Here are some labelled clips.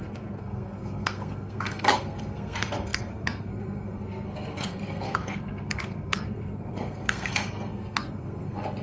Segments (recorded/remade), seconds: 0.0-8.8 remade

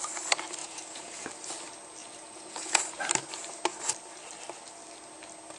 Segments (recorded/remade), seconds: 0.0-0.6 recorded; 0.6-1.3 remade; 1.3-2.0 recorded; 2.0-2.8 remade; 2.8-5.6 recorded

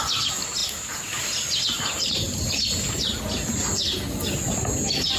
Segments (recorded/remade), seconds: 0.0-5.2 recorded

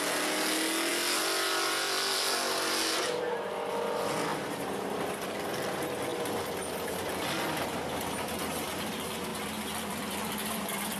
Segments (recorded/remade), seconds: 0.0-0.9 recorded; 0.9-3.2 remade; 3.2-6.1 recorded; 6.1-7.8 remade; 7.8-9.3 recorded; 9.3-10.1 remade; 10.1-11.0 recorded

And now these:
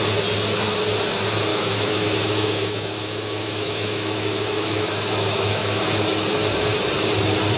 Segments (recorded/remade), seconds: 0.0-1.5 recorded; 1.5-5.8 remade; 5.8-7.6 recorded